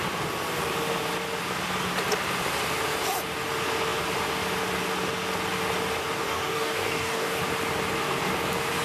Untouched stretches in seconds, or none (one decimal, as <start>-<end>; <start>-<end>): 0.0-6.2; 7.4-8.8